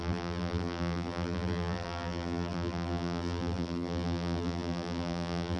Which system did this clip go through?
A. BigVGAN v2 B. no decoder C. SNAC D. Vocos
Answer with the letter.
A